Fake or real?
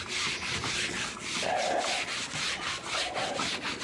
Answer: real